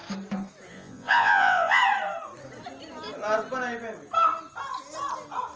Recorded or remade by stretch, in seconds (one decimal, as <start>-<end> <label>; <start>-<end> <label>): 0.0-0.7 recorded; 0.7-1.8 remade; 1.8-5.6 recorded